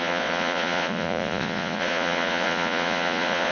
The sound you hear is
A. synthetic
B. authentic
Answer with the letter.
A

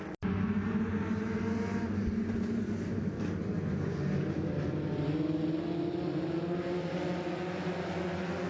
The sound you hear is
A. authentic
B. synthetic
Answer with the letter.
A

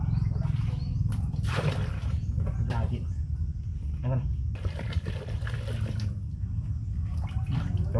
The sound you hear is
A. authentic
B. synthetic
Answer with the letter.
A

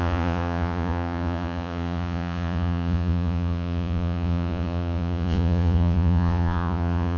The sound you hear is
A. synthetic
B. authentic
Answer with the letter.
A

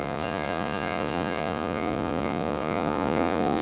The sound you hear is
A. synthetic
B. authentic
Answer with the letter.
A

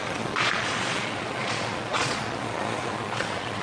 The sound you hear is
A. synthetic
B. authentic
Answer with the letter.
A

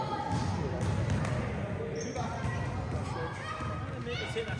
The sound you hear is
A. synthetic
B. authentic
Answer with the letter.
B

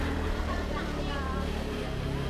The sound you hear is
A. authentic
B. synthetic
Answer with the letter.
A